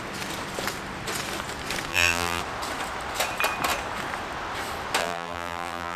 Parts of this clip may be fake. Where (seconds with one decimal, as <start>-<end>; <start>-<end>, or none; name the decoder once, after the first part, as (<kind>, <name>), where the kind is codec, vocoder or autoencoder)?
1.9-2.4 (vocoder, BigVGAN v2); 5.0-6.0